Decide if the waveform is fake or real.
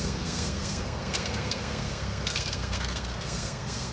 fake